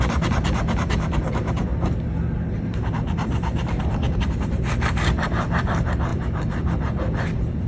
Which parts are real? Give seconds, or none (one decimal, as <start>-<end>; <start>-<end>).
1.7-2.6

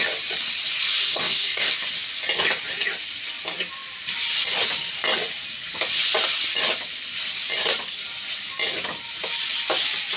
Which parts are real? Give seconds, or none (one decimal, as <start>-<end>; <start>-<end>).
0.0-1.0; 1.7-10.2